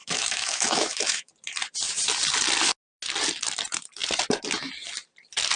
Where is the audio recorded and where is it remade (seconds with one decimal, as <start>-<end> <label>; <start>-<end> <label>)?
0.0-1.3 remade; 1.3-5.6 recorded